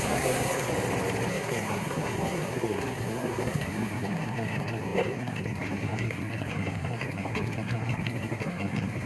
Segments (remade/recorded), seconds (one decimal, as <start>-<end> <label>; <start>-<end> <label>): 0.0-0.7 remade; 0.7-1.3 recorded; 1.3-9.1 remade